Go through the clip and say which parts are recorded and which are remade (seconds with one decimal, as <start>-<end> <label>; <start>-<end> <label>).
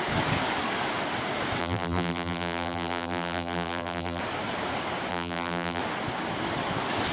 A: 0.0-1.6 recorded; 1.6-4.2 remade; 4.2-5.1 recorded; 5.1-5.8 remade; 5.8-7.1 recorded